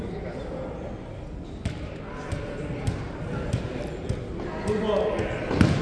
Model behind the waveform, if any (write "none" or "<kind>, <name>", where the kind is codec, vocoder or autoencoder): none